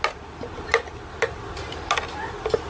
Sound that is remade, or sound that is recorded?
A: recorded